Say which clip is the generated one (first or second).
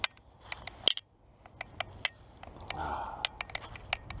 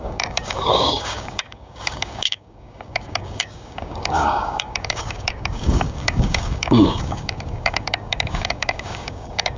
second